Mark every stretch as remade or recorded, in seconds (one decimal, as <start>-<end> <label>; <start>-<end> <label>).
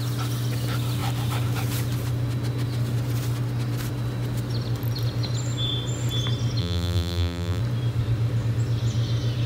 0.0-6.6 recorded; 6.6-7.6 remade; 7.6-9.5 recorded